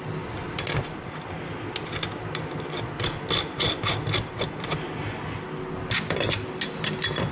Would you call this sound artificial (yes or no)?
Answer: no